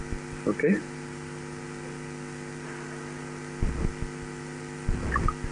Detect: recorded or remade recorded